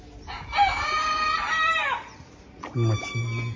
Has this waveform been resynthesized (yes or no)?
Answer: no